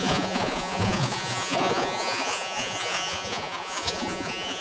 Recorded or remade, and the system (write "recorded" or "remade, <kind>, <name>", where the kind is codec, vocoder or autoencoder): remade, vocoder, Vocos